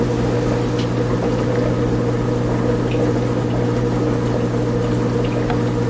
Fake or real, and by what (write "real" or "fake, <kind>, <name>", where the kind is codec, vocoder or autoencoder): real